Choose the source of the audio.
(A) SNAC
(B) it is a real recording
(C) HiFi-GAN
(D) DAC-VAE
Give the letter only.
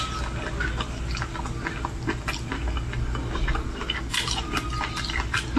B